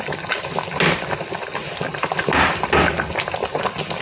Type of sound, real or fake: real